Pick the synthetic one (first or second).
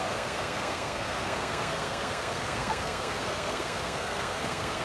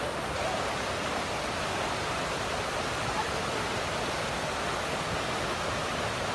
first